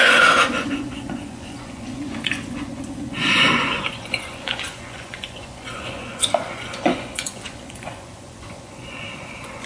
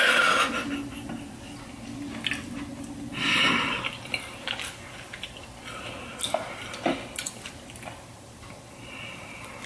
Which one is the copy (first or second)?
first